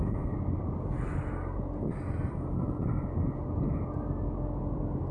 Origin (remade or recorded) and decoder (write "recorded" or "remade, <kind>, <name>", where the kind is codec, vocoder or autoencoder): recorded